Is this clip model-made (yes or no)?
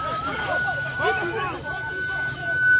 yes